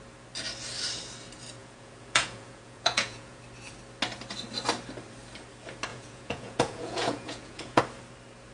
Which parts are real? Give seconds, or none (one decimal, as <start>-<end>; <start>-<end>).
0.0-1.6; 3.4-5.9; 7.8-8.5

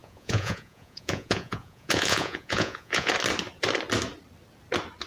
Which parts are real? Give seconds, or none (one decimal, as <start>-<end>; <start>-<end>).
3.1-5.1

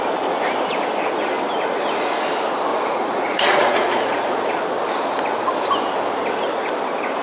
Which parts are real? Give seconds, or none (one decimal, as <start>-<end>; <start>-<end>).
0.0-2.7; 4.6-7.2

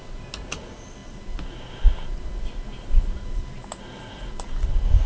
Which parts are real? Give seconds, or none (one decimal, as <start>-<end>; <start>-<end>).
0.0-5.1